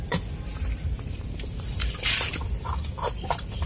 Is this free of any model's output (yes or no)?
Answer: no